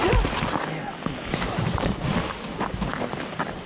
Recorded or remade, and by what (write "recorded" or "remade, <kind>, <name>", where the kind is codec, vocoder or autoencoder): recorded